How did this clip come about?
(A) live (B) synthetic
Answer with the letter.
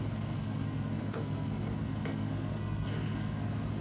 B